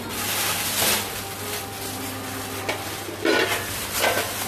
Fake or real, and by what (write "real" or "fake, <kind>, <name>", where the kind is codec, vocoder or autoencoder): real